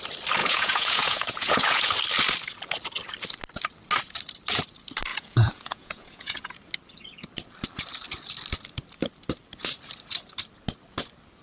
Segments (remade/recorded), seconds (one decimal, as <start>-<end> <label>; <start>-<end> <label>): 0.0-0.4 recorded; 0.4-1.9 remade; 1.9-5.1 recorded; 5.1-6.6 remade; 6.6-11.4 recorded